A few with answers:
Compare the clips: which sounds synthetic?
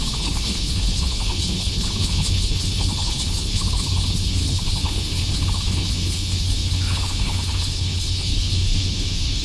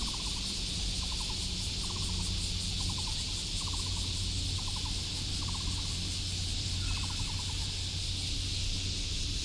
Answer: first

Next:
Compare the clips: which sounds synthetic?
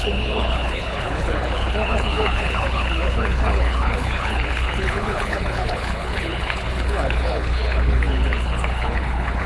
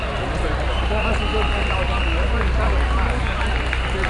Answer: first